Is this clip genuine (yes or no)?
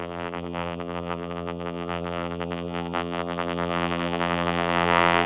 no